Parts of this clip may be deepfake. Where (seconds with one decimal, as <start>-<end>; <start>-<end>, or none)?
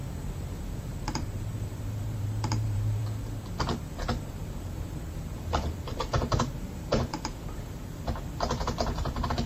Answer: 0.6-3.0; 4.2-9.5